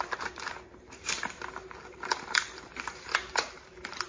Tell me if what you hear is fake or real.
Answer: fake